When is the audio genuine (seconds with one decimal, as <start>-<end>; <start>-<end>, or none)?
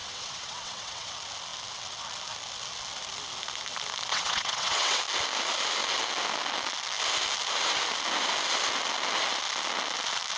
1.1-4.1; 5.0-10.4